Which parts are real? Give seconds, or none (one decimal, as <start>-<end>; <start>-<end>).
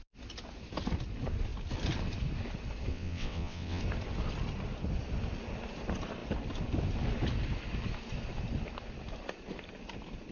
0.0-2.9; 3.8-10.3